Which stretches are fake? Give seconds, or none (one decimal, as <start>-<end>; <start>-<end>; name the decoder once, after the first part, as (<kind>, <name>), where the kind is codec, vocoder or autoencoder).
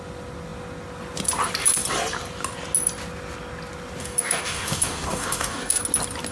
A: 4.0-5.8 (codec, DAC)